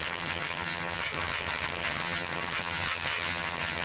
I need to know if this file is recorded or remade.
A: remade